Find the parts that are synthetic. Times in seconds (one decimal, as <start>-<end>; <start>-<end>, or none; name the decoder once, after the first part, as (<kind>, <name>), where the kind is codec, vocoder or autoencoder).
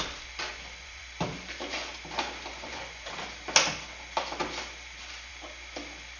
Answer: 0.5-1.1 (vocoder, Vocos); 2.5-3.1